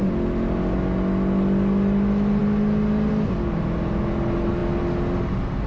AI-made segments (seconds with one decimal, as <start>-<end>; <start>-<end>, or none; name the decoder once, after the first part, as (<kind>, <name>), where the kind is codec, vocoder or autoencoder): none